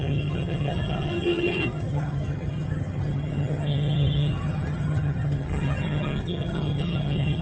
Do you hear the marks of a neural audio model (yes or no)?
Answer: yes